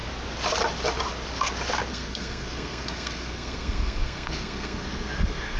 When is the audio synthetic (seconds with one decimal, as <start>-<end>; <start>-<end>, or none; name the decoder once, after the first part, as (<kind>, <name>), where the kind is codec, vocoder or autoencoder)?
1.9-5.6 (codec, SNAC)